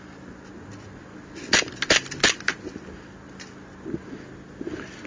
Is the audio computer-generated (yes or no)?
no